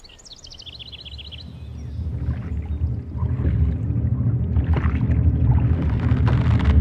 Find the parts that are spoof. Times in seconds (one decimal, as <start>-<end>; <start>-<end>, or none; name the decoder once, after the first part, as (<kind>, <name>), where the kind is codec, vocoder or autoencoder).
none

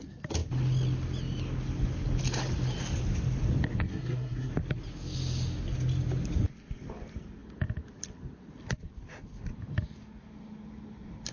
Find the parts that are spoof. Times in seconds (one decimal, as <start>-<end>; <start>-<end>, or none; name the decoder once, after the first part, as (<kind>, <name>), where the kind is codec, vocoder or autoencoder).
3.9-4.5 (codec, SNAC)

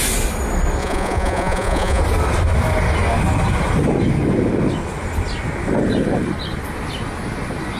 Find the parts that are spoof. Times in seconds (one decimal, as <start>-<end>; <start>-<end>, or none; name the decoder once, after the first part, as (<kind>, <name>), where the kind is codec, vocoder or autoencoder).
0.8-2.0 (vocoder, Vocos)

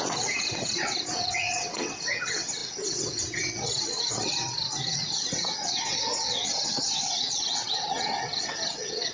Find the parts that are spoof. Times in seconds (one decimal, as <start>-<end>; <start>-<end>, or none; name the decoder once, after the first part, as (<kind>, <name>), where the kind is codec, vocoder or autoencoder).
0.0-9.1 (vocoder, WaveNeXt)